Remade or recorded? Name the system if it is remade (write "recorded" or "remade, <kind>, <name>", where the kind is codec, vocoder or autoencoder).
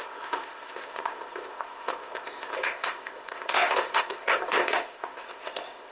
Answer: remade, codec, ZipCodec